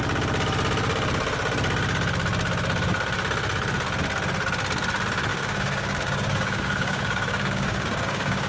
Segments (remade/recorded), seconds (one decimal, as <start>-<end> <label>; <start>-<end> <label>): 0.0-5.3 recorded; 5.3-8.5 remade